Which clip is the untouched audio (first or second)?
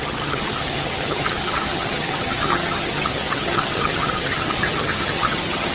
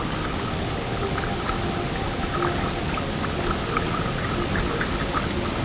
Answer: second